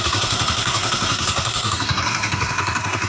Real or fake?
fake